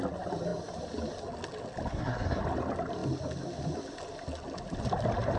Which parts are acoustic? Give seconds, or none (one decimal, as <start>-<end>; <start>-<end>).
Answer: 0.0-1.9; 2.4-5.4